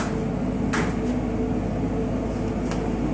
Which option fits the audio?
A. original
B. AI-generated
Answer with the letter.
A